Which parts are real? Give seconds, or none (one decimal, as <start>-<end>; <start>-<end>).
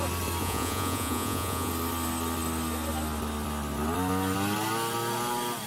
0.0-0.4; 1.7-5.7